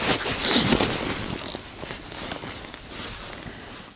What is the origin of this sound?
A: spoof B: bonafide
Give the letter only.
B